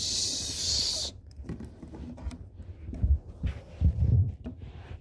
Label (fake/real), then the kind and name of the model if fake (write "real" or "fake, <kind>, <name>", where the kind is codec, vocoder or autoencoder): real